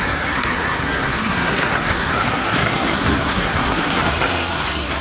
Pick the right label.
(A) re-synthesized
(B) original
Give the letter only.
A